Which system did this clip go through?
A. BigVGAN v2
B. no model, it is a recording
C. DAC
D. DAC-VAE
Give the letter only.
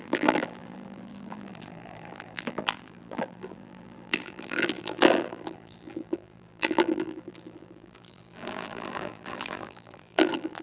A